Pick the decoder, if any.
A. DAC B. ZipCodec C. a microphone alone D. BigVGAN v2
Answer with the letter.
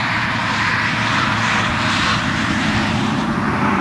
D